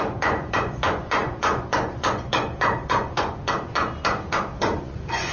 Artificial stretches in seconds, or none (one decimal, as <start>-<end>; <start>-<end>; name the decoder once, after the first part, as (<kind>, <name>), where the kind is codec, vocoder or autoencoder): 0.0-5.3 (vocoder, Vocos)